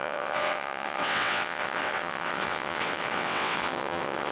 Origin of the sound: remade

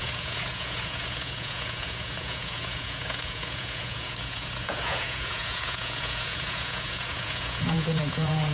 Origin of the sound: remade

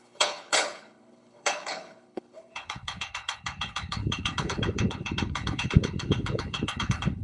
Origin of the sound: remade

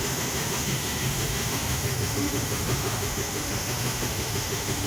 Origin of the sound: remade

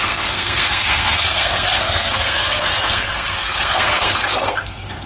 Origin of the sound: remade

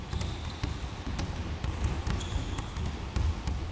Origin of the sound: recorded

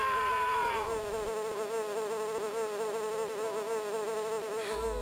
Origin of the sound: recorded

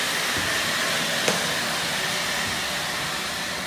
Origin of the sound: recorded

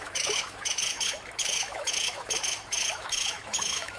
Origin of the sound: remade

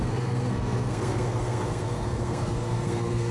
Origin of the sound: remade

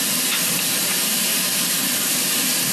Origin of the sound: recorded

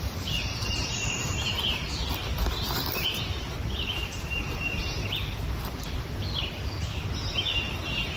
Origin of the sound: recorded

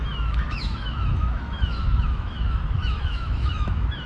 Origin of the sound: remade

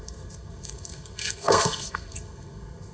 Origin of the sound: remade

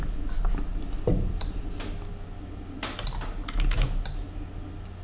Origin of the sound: recorded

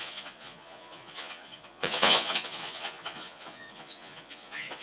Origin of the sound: remade